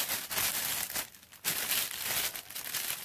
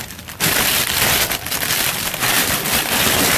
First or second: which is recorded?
first